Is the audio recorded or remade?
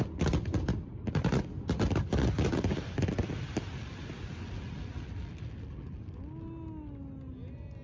recorded